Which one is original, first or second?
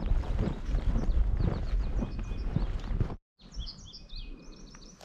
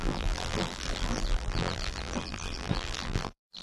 first